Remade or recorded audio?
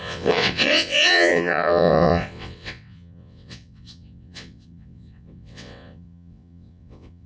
remade